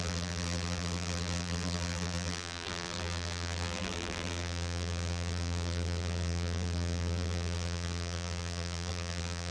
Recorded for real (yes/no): no